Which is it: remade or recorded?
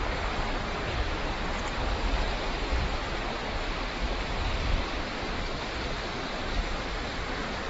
remade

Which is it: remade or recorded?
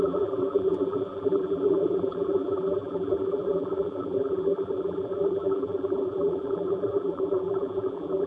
remade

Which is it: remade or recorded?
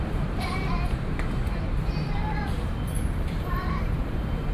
remade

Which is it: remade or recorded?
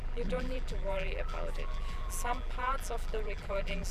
remade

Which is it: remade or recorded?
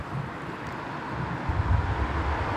recorded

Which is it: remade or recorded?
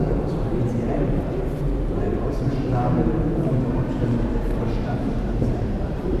remade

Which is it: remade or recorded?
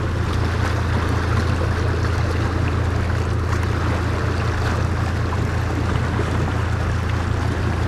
recorded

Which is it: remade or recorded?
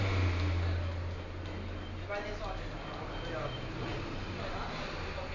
recorded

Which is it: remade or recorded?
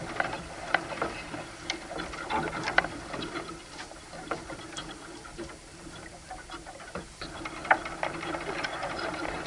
remade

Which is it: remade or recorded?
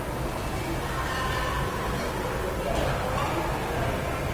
recorded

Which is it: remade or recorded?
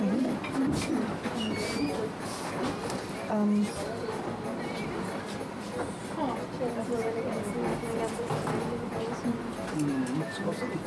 recorded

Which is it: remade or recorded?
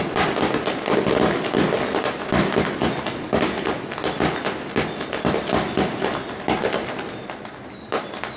recorded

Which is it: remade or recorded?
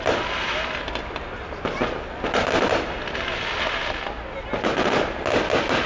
recorded